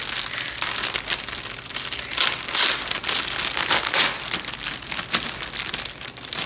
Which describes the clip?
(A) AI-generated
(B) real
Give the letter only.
B